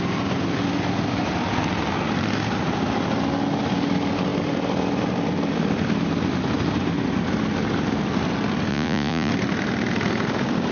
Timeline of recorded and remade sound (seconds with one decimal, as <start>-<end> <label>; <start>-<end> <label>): 0.0-8.7 recorded; 8.7-9.3 remade; 9.3-10.7 recorded